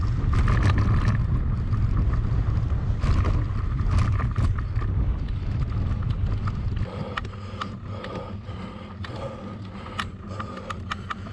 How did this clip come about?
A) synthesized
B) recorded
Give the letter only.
B